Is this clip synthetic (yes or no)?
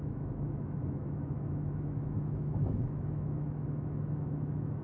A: yes